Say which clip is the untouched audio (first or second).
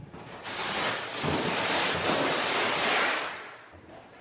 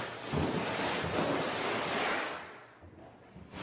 second